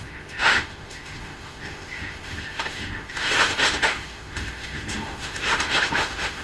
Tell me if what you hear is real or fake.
fake